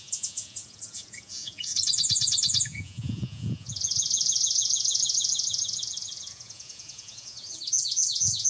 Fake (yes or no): yes